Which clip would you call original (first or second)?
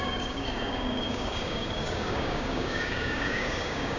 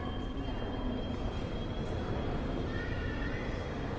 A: second